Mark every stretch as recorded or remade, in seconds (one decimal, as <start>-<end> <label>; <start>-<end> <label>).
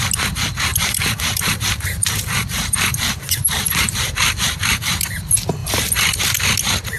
0.0-0.7 recorded; 0.7-4.9 remade; 4.9-5.6 recorded; 5.6-6.2 remade; 6.2-7.0 recorded